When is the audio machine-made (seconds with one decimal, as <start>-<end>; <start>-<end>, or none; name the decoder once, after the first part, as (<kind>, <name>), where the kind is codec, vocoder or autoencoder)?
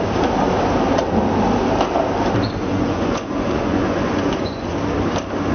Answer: 2.6-4.7 (vocoder, Vocos)